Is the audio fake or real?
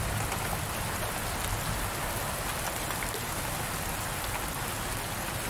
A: real